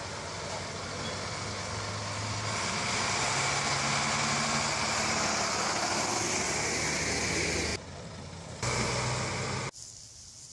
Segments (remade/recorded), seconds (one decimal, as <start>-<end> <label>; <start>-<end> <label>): 0.0-10.5 recorded

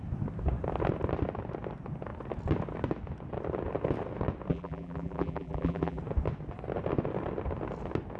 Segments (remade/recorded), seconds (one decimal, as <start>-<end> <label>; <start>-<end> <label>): 0.0-4.5 recorded; 4.5-6.0 remade; 6.0-8.2 recorded